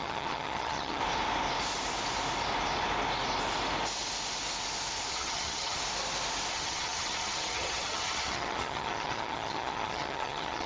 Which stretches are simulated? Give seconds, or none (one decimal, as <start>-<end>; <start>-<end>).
0.0-1.0; 5.1-5.8; 6.5-10.7

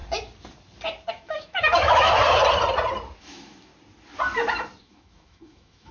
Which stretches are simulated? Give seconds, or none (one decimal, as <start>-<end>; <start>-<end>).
1.1-2.2; 3.2-3.7; 4.8-5.9

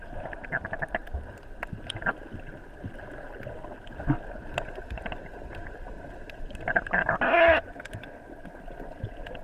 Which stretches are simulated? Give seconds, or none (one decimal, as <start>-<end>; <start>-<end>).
none

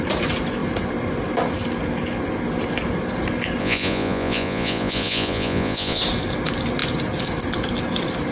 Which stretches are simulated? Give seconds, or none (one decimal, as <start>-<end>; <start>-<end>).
3.6-6.0